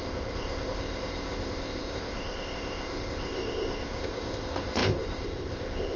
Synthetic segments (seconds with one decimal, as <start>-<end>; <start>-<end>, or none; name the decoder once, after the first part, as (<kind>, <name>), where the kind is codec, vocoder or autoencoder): 0.0-6.0 (codec, ZipCodec)